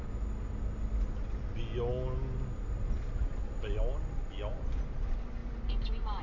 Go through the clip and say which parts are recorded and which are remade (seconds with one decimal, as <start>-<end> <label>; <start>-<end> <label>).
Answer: 0.0-6.2 recorded